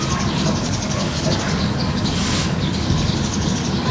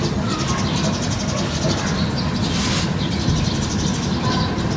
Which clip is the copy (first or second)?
first